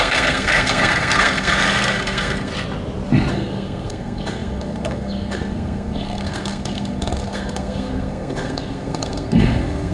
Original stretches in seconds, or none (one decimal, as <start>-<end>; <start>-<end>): 2.5-3.3